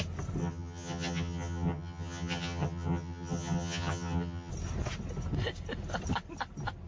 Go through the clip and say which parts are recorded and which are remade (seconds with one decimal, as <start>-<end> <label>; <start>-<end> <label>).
0.0-0.4 recorded; 0.4-4.5 remade; 4.5-6.9 recorded